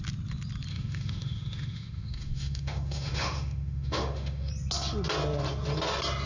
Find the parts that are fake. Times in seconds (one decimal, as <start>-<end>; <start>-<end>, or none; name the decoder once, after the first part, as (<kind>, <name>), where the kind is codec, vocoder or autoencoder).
0.7-4.5 (autoencoder, DAC-VAE)